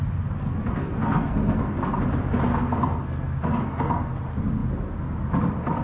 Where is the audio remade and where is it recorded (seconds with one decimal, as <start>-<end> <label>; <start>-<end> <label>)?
0.0-0.5 recorded; 0.5-1.6 remade; 1.6-2.5 recorded; 2.5-4.1 remade; 4.1-5.8 recorded